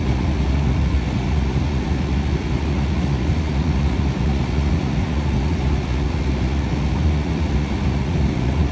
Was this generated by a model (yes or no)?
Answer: yes